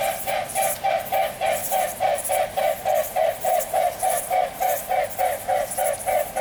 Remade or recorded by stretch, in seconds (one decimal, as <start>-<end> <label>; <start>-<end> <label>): 0.0-1.6 recorded; 1.6-2.5 remade; 2.5-3.0 recorded; 3.0-4.2 remade; 4.2-6.4 recorded